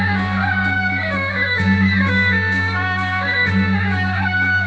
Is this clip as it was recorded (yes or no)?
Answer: no